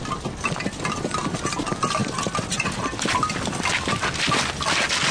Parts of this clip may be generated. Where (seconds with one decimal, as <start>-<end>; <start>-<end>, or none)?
2.0-2.8